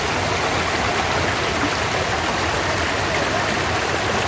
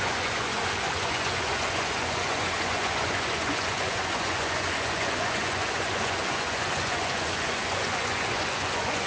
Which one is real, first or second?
first